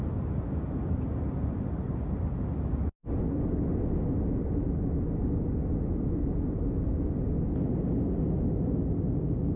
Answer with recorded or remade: recorded